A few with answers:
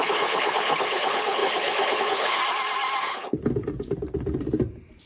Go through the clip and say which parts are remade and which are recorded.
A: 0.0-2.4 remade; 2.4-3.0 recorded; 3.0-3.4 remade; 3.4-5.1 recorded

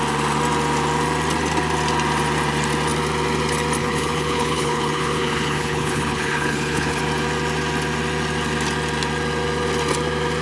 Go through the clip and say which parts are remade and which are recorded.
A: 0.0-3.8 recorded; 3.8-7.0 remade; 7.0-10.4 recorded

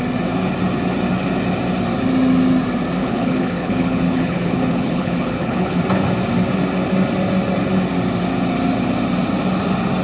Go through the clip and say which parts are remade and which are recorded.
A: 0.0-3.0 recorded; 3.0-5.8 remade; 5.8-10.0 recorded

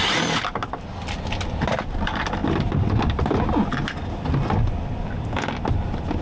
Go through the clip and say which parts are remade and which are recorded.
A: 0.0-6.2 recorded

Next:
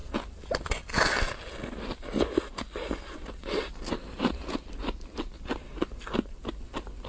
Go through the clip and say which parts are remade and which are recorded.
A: 0.0-7.1 recorded